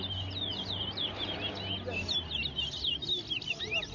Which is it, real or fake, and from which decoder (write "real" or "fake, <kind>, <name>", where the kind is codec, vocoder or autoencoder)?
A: real